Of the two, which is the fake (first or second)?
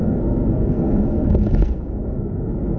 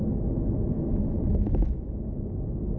first